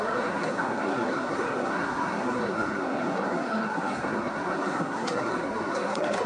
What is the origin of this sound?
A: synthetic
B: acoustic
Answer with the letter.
A